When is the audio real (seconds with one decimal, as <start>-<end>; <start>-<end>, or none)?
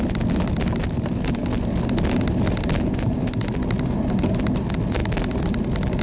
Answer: 0.0-6.0